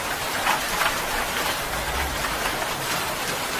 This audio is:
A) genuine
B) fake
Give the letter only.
A